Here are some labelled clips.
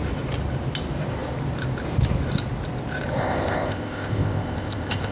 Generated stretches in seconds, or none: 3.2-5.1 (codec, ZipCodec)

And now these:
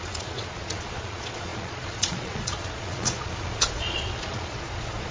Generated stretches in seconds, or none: 0.0-5.1 (vocoder, Vocos)